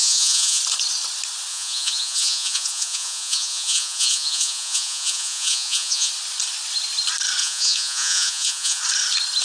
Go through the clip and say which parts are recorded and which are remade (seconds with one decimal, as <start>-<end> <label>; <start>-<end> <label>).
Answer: 0.0-0.6 remade; 0.6-1.5 recorded; 1.5-6.1 remade; 6.1-7.4 recorded; 7.4-8.8 remade; 8.8-9.4 recorded